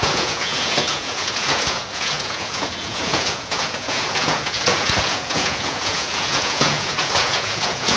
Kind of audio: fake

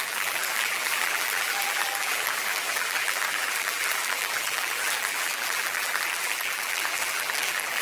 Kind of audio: fake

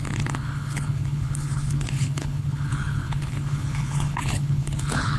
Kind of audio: fake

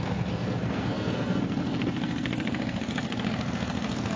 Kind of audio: fake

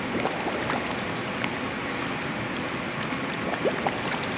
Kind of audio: real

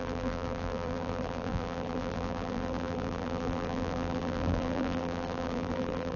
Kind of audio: fake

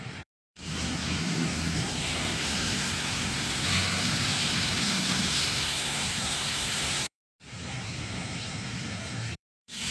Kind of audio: fake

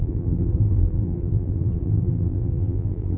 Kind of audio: fake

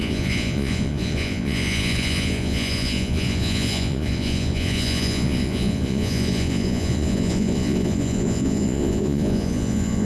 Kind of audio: fake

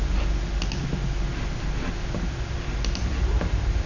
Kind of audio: real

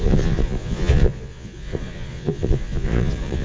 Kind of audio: fake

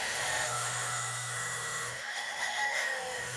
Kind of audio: fake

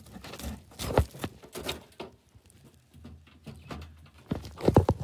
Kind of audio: real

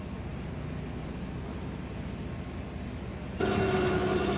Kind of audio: real